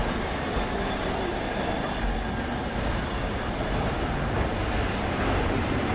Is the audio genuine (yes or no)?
yes